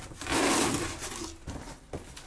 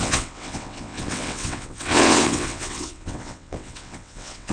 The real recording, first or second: first